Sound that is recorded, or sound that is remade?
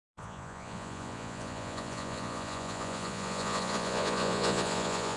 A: remade